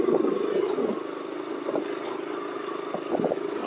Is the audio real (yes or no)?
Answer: yes